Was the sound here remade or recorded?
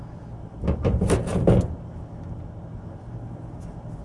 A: recorded